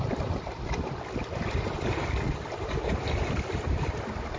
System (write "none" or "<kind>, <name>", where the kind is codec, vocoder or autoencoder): none